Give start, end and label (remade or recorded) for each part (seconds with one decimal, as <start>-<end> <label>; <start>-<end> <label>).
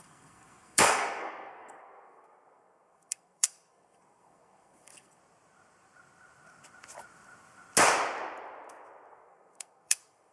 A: 0.0-5.2 remade; 5.2-9.1 recorded; 9.1-10.3 remade